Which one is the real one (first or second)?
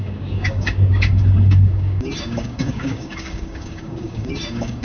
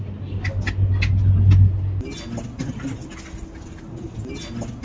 second